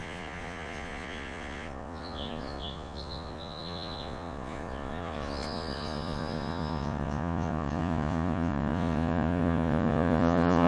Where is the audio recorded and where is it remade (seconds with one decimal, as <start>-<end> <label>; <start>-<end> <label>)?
0.0-10.7 remade